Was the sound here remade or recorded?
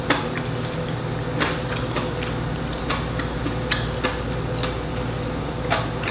recorded